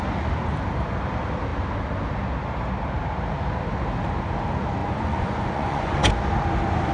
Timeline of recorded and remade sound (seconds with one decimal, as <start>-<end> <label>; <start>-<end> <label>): 0.0-4.8 recorded; 4.8-6.1 remade; 6.1-6.9 recorded

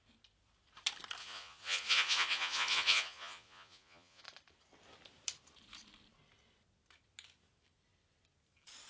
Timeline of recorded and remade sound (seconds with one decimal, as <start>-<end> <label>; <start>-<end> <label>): 0.0-1.2 recorded; 1.2-4.2 remade; 4.2-8.9 recorded

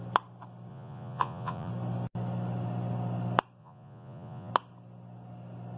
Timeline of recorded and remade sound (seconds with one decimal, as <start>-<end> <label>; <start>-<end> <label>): 0.0-0.7 recorded; 0.7-1.7 remade; 1.7-3.6 recorded; 3.6-4.5 remade; 4.5-5.8 recorded